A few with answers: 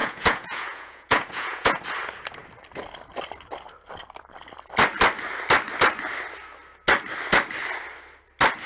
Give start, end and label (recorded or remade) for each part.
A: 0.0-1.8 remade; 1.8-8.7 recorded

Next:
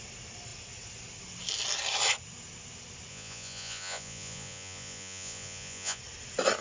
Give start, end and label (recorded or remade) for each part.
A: 0.0-3.1 recorded; 3.1-6.0 remade; 6.0-6.6 recorded

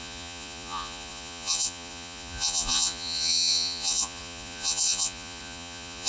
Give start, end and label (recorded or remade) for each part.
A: 0.0-6.1 remade

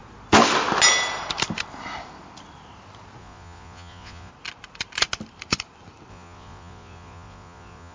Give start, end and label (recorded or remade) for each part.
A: 0.0-3.2 recorded; 3.2-4.3 remade; 4.3-6.1 recorded; 6.1-7.9 remade

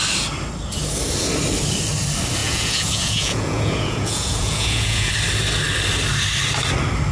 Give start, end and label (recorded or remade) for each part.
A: 0.0-2.4 recorded; 2.4-5.1 remade; 5.1-7.1 recorded

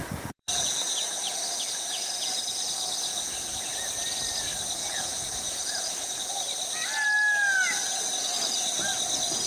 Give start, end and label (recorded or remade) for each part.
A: 0.0-2.6 remade; 2.6-3.1 recorded; 3.1-3.7 remade; 3.7-4.8 recorded; 4.8-6.3 remade; 6.3-9.5 recorded

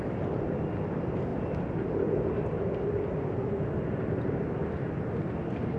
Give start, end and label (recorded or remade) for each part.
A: 0.0-5.8 recorded

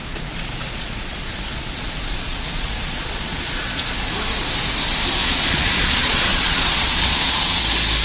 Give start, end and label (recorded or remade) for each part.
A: 0.0-4.0 remade; 4.0-5.2 recorded; 5.2-7.6 remade; 7.6-8.0 recorded